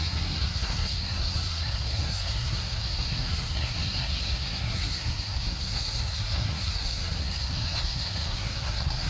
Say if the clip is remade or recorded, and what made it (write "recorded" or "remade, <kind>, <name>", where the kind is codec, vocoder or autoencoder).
remade, codec, SNAC